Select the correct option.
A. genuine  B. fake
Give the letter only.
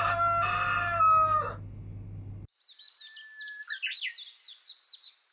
A